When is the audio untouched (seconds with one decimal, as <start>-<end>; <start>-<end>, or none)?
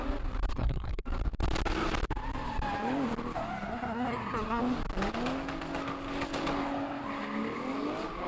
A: 0.0-0.5; 1.0-3.7; 4.6-8.3